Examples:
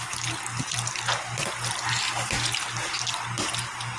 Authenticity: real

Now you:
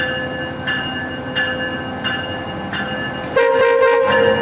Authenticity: real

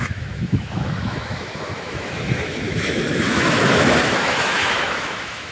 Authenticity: fake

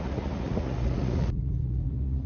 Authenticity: fake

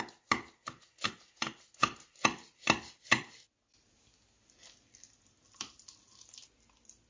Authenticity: real